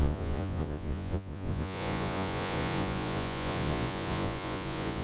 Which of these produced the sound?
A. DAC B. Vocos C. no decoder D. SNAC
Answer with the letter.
B